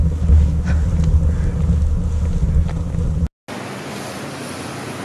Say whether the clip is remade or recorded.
recorded